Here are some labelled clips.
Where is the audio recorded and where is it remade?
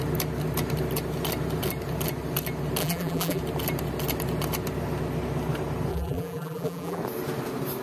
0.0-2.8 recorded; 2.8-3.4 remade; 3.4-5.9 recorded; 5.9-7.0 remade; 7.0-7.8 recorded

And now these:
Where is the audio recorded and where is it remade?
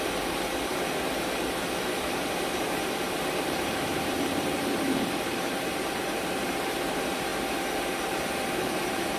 0.0-0.7 remade; 0.7-1.8 recorded; 1.8-7.3 remade; 7.3-8.0 recorded; 8.0-9.2 remade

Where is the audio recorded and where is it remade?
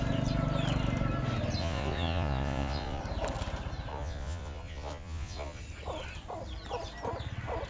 0.0-1.6 recorded; 1.6-3.0 remade; 3.0-3.9 recorded; 3.9-5.6 remade; 5.6-7.7 recorded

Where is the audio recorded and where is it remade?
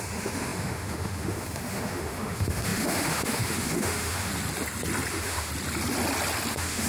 0.0-4.3 remade; 4.3-5.1 recorded; 5.1-5.5 remade; 5.5-6.5 recorded; 6.5-6.9 remade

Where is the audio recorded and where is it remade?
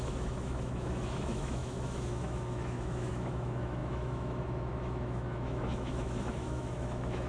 0.0-7.3 remade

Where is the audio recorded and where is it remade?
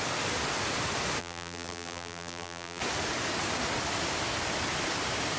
0.0-1.2 recorded; 1.2-2.8 remade; 2.8-5.4 recorded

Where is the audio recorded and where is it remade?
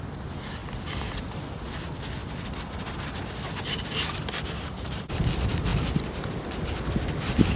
0.0-5.7 recorded; 5.7-6.6 remade; 6.6-7.6 recorded